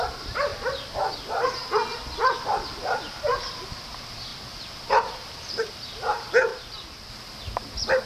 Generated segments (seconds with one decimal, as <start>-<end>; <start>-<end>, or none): 0.5-1.3; 2.2-3.9; 4.3-5.7; 6.5-7.1